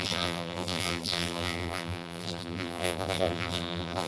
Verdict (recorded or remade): remade